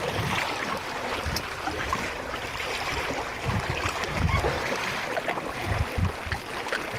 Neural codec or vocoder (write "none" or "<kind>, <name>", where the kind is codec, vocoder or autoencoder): none